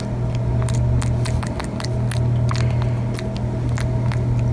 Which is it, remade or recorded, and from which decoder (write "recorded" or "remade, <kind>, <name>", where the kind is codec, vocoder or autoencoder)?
recorded